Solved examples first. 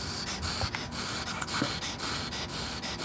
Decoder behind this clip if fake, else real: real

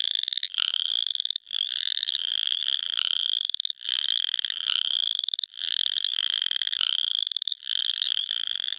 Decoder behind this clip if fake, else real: fake, vocoder, BigVGAN v2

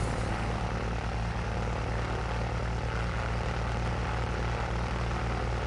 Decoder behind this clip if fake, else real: real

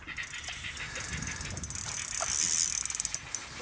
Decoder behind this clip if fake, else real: real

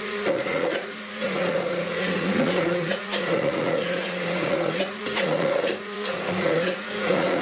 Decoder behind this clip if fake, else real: fake, vocoder, Vocos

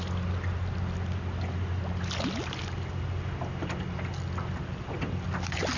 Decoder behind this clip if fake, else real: real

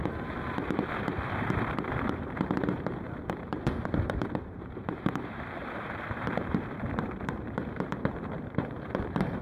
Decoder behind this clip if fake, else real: fake, vocoder, BigVGAN v2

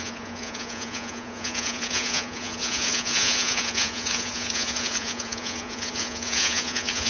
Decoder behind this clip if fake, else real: fake, vocoder, Vocos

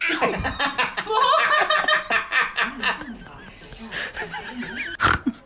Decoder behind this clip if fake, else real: real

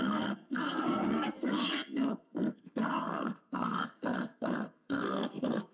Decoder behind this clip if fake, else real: fake, codec, SNAC